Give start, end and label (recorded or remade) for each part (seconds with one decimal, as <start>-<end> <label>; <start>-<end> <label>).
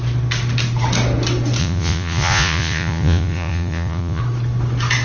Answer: 0.0-1.6 recorded; 1.6-4.2 remade; 4.2-5.0 recorded